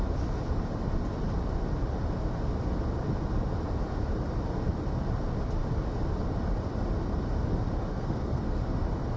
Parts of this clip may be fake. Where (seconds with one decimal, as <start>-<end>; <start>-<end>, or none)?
7.9-8.6